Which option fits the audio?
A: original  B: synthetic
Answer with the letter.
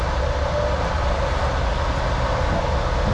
A